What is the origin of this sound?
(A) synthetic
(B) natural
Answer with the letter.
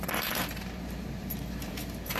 A